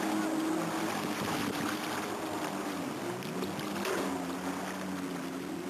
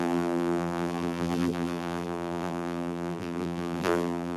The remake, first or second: second